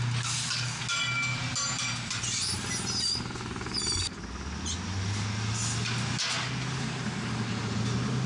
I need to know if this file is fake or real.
real